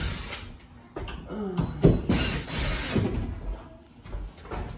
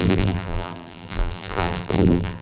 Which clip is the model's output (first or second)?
second